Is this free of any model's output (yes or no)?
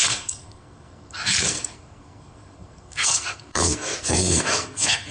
no